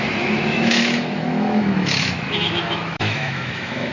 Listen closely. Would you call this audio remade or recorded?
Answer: remade